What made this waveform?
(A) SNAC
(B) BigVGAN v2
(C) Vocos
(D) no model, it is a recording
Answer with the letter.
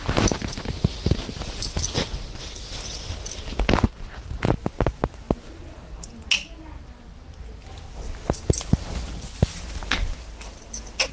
D